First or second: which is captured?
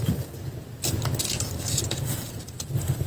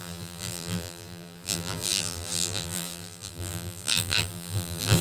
first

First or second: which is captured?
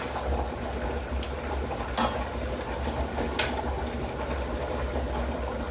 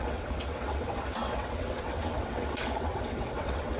first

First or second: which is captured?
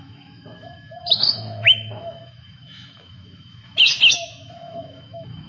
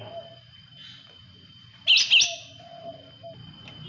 second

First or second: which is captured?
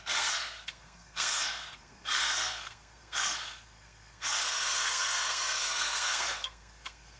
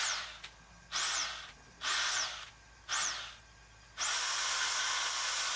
second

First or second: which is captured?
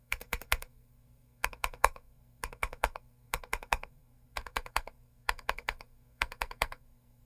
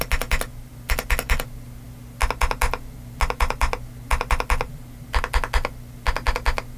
second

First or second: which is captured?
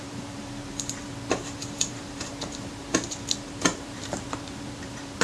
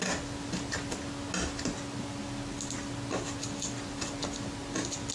second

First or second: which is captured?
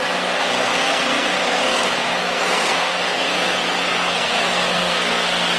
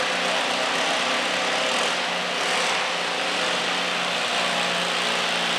second